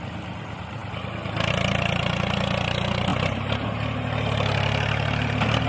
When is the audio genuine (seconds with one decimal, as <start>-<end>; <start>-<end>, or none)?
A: 0.0-5.7